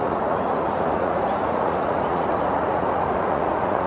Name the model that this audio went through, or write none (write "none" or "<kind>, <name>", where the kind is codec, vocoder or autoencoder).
vocoder, Vocos